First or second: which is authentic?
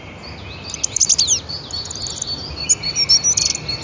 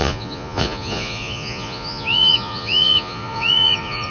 first